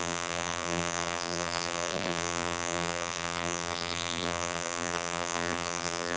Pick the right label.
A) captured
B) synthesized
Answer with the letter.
B